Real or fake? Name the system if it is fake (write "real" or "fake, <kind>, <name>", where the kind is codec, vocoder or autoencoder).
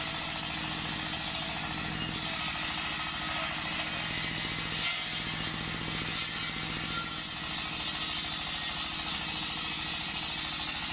real